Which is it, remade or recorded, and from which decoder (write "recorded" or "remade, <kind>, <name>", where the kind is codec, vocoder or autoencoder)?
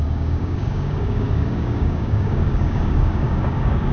remade, codec, DAC